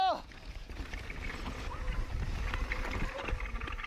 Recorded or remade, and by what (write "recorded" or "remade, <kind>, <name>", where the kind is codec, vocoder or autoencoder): recorded